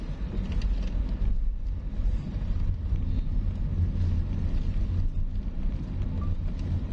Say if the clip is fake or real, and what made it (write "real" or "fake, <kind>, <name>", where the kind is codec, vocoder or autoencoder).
real